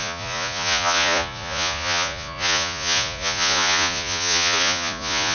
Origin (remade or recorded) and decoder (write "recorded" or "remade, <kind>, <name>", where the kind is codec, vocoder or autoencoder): remade, vocoder, Vocos